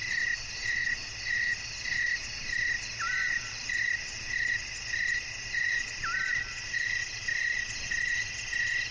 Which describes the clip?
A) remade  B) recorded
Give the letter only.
B